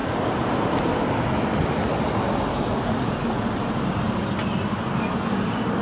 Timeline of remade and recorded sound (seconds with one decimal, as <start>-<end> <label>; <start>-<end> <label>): 0.0-5.8 recorded